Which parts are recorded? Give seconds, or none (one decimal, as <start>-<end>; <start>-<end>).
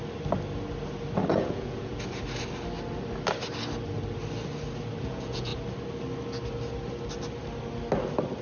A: 0.0-1.3; 1.9-5.0; 5.5-8.4